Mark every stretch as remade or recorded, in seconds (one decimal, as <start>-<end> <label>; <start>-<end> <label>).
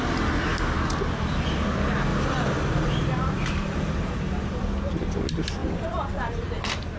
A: 0.0-2.1 recorded; 2.1-4.6 remade; 4.6-5.6 recorded; 5.6-6.6 remade; 6.6-7.0 recorded